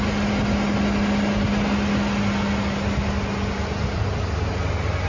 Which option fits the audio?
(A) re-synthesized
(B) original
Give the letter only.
B